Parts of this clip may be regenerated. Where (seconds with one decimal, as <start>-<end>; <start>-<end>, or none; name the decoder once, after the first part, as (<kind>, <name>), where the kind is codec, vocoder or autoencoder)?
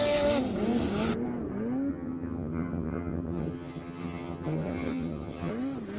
1.9-5.5 (vocoder, HiFi-GAN)